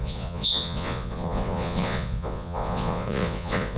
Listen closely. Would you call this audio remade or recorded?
remade